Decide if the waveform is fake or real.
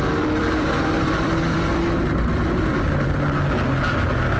fake